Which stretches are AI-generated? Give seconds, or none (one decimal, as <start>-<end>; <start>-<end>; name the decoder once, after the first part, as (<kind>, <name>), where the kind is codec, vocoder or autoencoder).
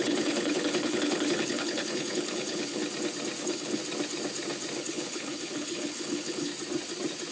0.0-2.8 (codec, HILCodec); 3.4-3.8; 4.8-6.5